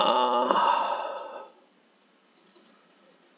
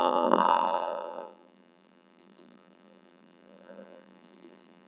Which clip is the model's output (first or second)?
second